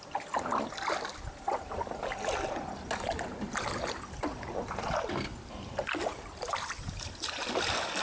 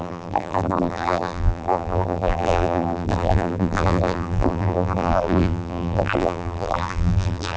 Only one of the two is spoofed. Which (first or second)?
second